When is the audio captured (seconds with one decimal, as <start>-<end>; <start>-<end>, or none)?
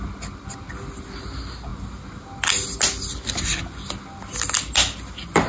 0.0-5.5